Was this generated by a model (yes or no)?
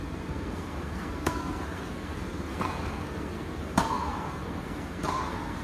yes